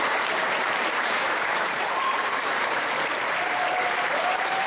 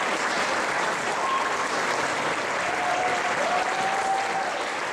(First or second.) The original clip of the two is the second